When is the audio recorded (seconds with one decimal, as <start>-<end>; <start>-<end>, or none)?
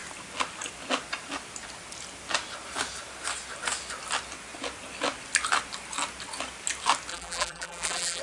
0.0-7.1